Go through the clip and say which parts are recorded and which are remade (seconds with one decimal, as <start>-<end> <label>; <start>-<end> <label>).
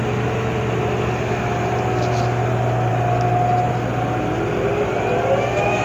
0.0-5.8 recorded